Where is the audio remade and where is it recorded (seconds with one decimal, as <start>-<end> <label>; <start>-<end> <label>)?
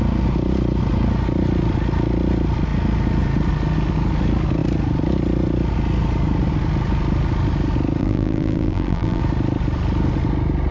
0.0-8.0 recorded; 8.0-9.2 remade; 9.2-10.7 recorded